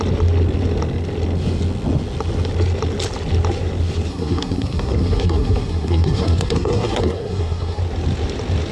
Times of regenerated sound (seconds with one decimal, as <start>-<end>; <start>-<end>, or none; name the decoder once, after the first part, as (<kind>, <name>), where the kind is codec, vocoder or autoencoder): 4.1-7.8 (codec, SNAC)